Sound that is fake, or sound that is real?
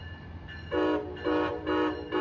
real